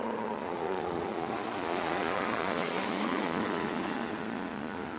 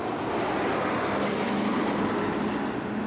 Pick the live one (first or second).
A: second